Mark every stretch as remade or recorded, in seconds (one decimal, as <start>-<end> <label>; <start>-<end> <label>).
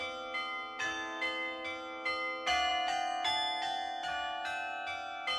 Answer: 0.0-5.4 recorded